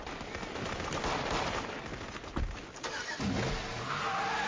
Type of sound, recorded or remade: recorded